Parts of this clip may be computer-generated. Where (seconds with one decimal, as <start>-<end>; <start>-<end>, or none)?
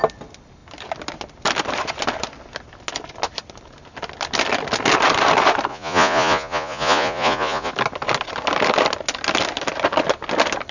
5.7-7.7